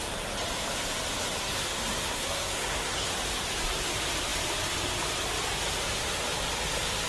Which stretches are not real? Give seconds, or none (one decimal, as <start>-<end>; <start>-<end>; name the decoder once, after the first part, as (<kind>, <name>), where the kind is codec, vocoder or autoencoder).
1.4-3.1 (codec, SNAC)